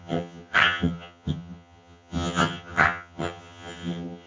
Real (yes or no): no